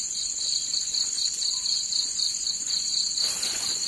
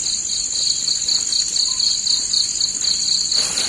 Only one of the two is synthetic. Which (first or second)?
first